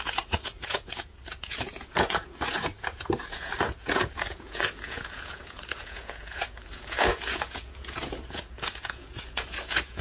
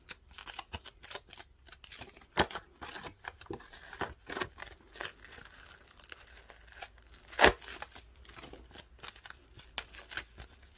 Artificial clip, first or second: first